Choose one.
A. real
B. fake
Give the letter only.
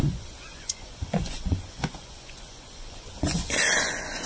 B